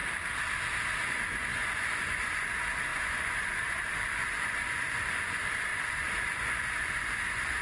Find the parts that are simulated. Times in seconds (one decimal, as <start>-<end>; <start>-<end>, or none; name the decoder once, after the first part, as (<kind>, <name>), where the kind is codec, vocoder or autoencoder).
1.0-7.6 (vocoder, Vocos)